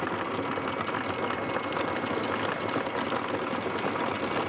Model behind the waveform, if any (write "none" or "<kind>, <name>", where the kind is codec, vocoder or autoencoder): none